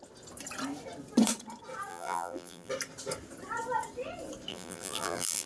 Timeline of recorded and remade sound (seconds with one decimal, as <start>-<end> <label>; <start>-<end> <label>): 0.0-1.9 recorded; 1.9-2.7 remade; 2.7-4.5 recorded; 4.5-5.5 remade